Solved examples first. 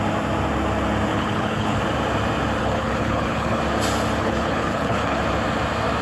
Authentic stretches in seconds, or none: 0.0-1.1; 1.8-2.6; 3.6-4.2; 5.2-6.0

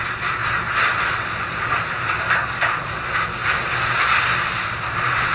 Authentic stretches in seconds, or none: 0.0-5.3

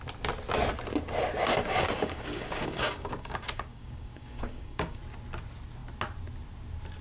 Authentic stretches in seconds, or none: 0.0-1.5; 5.0-7.0